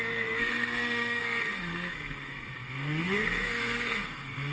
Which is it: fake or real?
fake